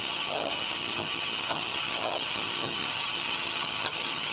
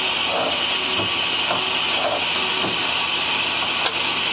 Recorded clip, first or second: second